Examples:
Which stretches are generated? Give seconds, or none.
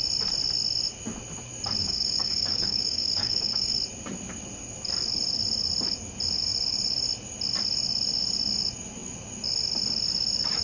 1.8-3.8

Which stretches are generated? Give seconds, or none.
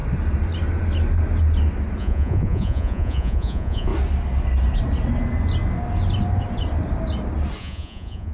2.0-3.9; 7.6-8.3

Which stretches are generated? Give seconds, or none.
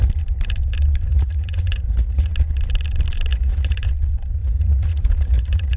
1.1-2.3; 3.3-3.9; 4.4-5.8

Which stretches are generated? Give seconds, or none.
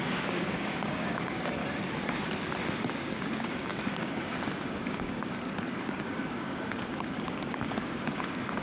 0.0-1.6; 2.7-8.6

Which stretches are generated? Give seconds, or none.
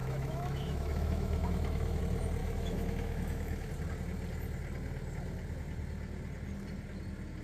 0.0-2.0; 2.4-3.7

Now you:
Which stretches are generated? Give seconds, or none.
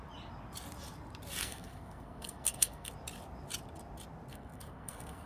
1.4-2.9; 4.3-5.3